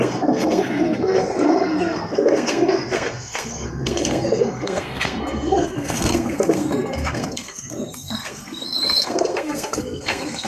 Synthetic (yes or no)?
yes